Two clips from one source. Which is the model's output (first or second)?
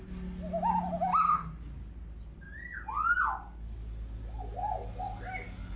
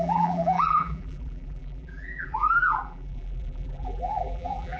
second